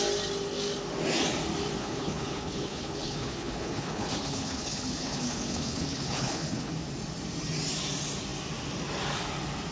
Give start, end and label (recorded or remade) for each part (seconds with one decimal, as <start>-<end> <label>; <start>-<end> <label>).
0.0-1.8 recorded; 1.8-6.7 remade; 6.7-9.7 recorded